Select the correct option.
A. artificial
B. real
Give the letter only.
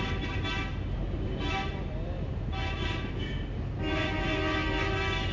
B